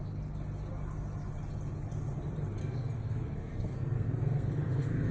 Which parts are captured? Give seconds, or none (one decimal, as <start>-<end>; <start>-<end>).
0.0-2.6